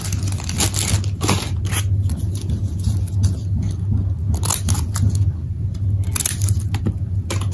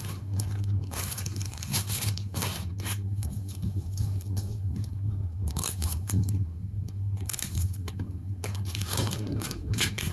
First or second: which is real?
first